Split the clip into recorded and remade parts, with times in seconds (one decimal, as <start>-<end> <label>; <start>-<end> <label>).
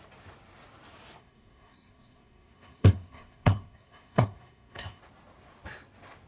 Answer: 0.0-1.2 recorded; 1.2-5.0 remade; 5.0-6.3 recorded